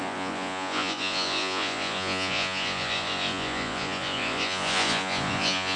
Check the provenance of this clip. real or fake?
fake